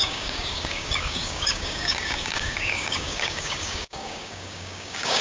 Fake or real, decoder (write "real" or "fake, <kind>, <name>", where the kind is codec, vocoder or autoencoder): fake, codec, DAC